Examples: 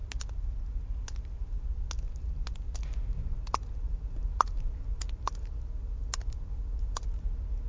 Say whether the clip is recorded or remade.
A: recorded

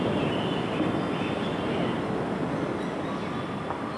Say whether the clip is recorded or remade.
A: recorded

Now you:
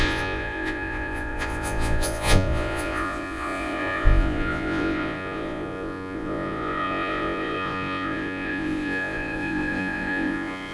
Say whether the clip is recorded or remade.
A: remade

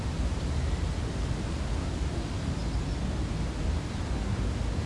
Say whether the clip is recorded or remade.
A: recorded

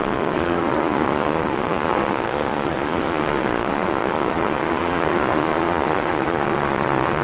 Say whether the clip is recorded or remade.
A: remade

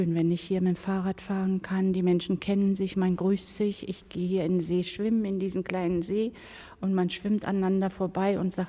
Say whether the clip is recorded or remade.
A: recorded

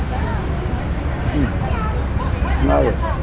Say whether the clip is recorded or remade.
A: recorded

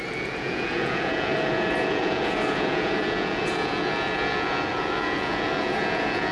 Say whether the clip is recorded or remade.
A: remade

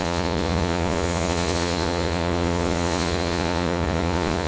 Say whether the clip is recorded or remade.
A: remade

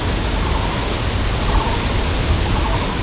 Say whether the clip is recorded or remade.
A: recorded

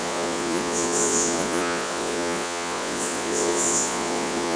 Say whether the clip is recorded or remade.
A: remade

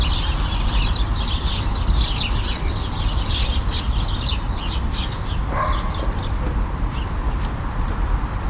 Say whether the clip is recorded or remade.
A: recorded